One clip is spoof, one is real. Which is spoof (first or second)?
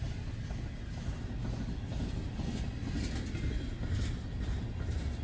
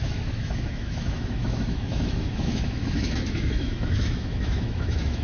second